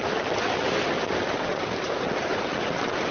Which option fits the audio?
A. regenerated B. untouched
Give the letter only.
A